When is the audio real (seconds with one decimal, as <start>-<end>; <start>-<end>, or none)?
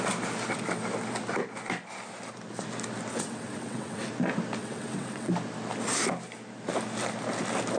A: 0.0-3.1; 4.1-4.6; 5.3-7.8